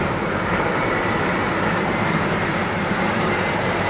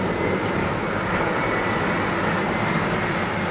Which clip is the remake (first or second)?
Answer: first